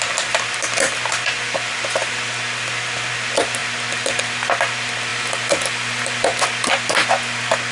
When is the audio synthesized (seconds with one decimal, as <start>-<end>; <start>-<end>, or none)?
5.1-6.7